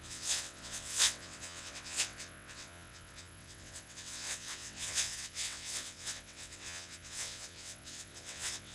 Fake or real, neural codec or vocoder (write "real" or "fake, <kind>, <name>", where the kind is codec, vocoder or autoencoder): fake, vocoder, WaveNeXt